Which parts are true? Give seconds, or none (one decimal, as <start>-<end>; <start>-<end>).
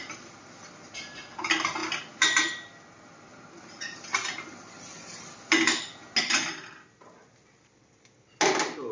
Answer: 0.0-8.9